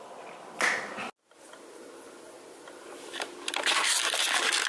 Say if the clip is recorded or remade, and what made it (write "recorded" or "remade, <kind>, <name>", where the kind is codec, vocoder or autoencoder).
recorded